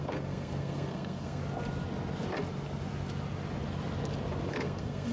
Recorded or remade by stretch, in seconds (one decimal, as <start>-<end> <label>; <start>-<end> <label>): 0.0-1.4 remade; 1.4-4.5 recorded; 4.5-5.1 remade